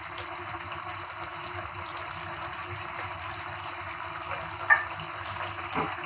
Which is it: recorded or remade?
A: recorded